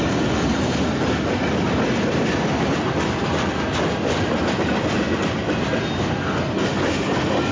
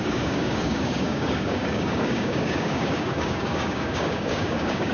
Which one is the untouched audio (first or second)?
first